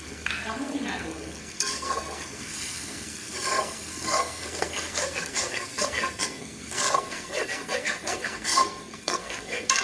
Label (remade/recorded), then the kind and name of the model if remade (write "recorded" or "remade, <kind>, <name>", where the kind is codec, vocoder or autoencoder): remade, codec, SNAC